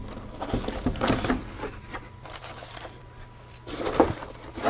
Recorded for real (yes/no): no